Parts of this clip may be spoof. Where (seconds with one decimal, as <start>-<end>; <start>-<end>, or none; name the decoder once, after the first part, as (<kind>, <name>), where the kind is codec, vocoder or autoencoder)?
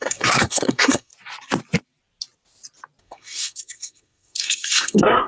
0.0-1.1 (codec, SNAC); 3.0-5.3